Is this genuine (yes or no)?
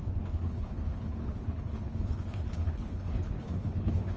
no